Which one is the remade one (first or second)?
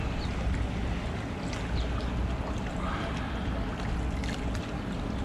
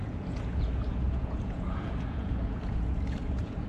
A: second